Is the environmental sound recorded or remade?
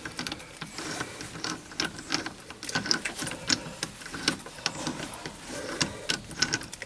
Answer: recorded